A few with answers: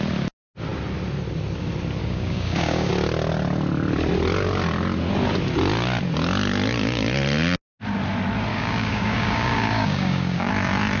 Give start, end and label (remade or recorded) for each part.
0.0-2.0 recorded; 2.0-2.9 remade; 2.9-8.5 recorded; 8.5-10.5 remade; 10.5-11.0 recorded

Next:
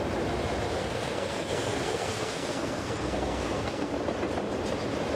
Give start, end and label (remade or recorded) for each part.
0.0-0.8 recorded; 0.8-3.9 remade; 3.9-5.2 recorded

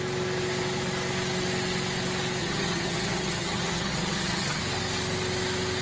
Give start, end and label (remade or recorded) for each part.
0.0-2.4 recorded; 2.4-4.6 remade; 4.6-5.8 recorded